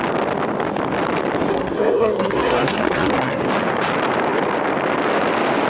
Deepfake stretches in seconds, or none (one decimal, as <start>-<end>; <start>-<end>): 1.5-3.4